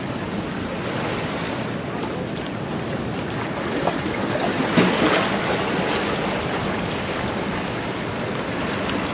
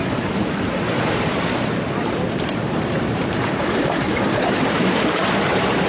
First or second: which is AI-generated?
second